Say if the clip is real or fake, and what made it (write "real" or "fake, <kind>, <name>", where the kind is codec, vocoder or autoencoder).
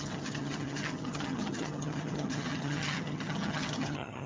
fake, vocoder, HiFi-GAN